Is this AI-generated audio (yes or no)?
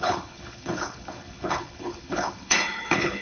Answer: yes